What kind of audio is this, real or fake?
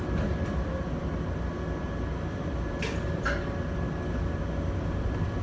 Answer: real